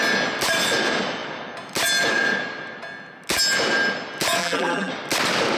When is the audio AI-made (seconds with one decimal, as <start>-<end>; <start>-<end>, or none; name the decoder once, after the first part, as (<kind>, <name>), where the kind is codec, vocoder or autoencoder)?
4.4-4.9 (vocoder, BigVGAN v2)